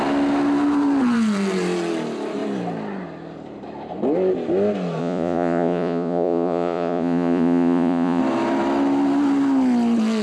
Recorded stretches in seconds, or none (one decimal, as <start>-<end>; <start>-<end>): 0.0-5.0; 8.2-10.2

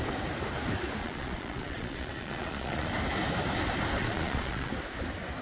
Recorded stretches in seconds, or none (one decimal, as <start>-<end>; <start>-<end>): 0.0-1.0; 2.9-4.0; 4.7-5.4